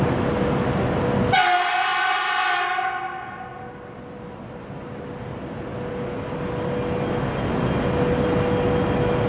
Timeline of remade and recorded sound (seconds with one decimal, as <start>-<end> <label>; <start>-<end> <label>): 0.0-9.3 recorded

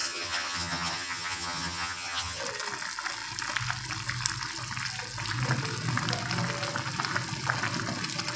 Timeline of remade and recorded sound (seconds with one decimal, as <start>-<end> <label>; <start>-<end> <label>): 0.0-2.4 remade; 2.4-8.4 recorded

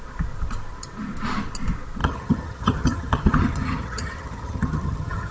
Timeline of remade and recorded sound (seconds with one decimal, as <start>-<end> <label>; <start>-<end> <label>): 0.0-2.0 recorded; 2.0-5.3 remade

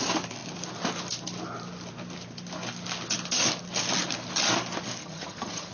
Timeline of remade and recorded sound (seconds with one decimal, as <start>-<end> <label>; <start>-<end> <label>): 0.0-5.0 recorded; 5.0-5.7 remade